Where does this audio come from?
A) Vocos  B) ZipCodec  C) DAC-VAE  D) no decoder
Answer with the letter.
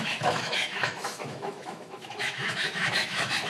C